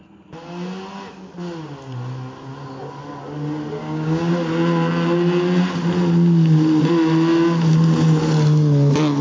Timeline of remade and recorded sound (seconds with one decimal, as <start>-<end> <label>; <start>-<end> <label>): 0.0-3.8 recorded; 3.8-4.3 remade; 4.3-9.2 recorded